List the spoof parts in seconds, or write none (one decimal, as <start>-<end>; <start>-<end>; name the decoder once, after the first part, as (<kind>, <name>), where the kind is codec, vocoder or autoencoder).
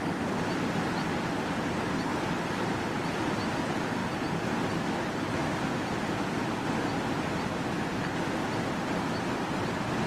2.1-2.8 (vocoder, BigVGAN v2); 5.4-7.0